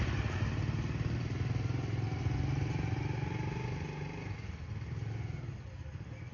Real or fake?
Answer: real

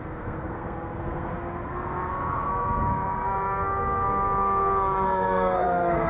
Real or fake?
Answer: fake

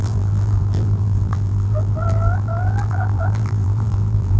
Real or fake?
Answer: fake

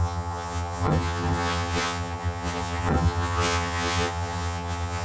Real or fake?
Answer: fake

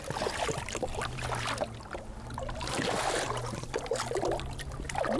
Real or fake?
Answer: real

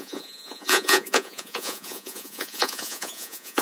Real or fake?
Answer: fake